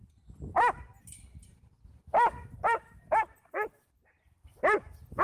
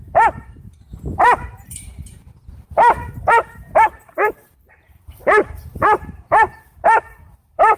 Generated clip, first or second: second